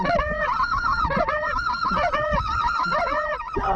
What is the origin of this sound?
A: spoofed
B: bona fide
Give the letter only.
A